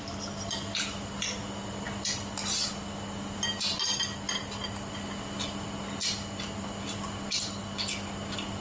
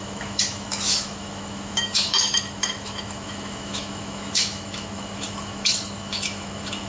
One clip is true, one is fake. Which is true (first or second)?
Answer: first